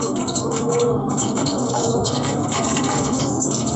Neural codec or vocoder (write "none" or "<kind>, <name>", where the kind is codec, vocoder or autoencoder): codec, SNAC